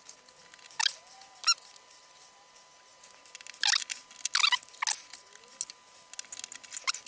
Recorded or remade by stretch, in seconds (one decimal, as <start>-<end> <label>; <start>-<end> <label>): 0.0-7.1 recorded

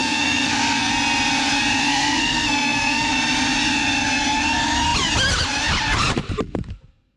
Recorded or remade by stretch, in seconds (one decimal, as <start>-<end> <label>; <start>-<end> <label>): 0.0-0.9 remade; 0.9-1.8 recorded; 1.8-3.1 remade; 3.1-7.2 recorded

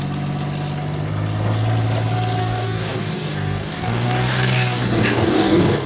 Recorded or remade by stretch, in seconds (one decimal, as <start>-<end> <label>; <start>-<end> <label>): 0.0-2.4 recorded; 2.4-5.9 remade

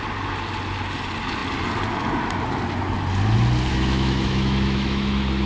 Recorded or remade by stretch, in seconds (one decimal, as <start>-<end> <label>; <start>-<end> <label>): 0.0-3.7 recorded; 3.7-5.5 remade

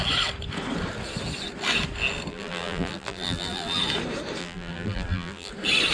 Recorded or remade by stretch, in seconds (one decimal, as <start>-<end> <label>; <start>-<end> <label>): 0.0-2.3 recorded; 2.3-3.8 remade; 3.8-4.4 recorded; 4.4-5.5 remade; 5.5-5.9 recorded

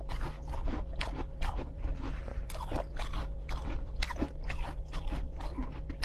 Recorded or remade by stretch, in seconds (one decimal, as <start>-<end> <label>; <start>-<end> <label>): 0.0-6.0 remade